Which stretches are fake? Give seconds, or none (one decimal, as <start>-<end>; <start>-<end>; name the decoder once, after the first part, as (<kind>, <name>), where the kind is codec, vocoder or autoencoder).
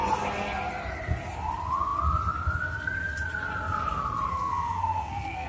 4.3-5.5 (codec, SNAC)